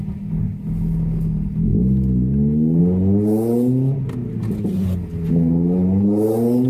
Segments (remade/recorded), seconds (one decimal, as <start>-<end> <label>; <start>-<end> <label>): 0.0-6.7 recorded

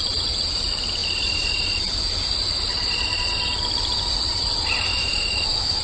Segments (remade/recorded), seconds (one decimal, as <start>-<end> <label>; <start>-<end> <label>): 0.0-4.9 recorded; 4.9-5.8 remade

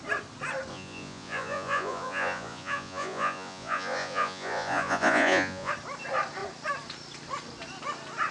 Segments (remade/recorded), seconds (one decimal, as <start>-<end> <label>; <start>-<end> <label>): 0.0-0.7 recorded; 0.7-5.7 remade; 5.7-8.3 recorded

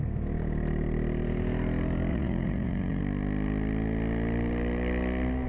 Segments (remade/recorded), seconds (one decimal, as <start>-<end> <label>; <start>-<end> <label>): 0.0-2.1 recorded; 2.1-3.0 remade; 3.0-5.5 recorded

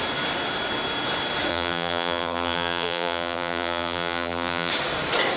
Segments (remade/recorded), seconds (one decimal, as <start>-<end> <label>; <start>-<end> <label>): 0.0-1.5 recorded; 1.5-4.7 remade; 4.7-5.4 recorded